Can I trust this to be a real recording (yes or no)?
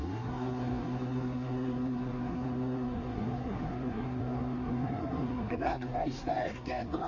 no